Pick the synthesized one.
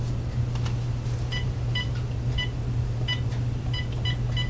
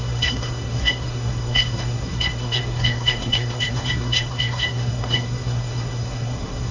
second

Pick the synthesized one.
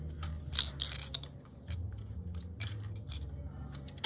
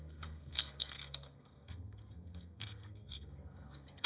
second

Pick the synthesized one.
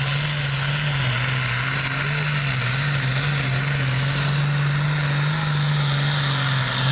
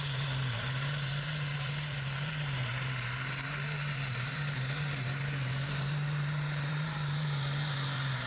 second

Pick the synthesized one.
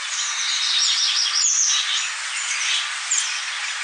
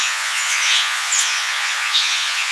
second